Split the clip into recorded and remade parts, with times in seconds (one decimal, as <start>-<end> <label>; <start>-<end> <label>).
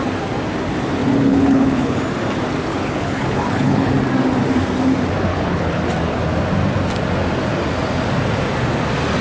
0.0-1.0 recorded; 1.0-2.0 remade; 2.0-2.7 recorded; 2.7-3.9 remade; 3.9-5.3 recorded; 5.3-5.8 remade; 5.8-9.2 recorded